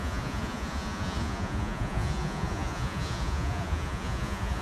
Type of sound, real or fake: fake